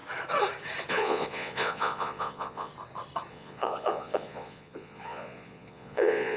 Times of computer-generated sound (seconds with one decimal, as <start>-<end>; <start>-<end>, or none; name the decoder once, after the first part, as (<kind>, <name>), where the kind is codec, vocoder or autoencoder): 0.9-2.7 (vocoder, Vocos); 3.3-6.4